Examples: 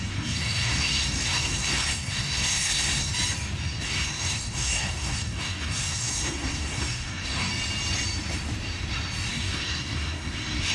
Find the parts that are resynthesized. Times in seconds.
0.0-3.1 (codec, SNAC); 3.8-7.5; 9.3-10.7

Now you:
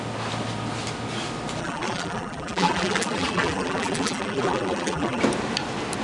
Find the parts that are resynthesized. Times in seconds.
1.6-5.2 (vocoder, BigVGAN v2)

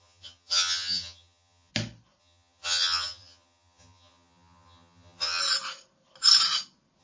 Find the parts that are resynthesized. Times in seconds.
0.0-1.7 (vocoder, HiFi-GAN); 2.2-5.4